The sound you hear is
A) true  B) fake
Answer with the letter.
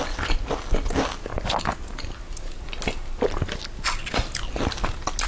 A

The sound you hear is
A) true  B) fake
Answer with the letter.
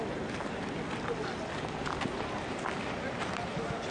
A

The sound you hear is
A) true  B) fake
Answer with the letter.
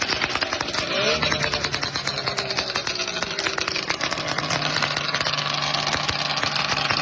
A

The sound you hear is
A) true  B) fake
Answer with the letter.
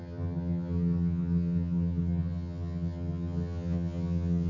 B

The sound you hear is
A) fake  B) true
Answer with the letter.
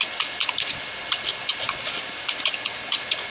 B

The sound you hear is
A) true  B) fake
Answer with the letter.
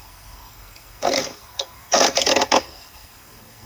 B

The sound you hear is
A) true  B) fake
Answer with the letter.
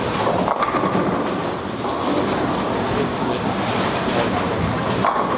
A